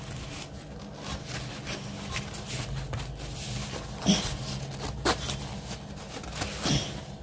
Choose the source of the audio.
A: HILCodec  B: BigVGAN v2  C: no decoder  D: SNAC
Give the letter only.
C